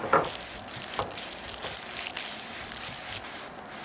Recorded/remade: recorded